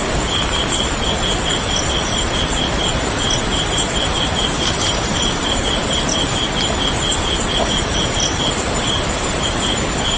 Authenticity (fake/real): fake